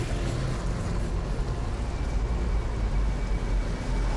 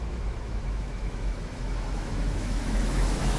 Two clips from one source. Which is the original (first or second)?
first